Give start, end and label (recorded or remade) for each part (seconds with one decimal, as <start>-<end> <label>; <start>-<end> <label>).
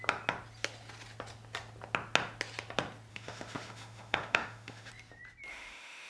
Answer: 0.0-3.1 recorded; 3.1-4.9 remade; 4.9-5.5 recorded; 5.5-6.1 remade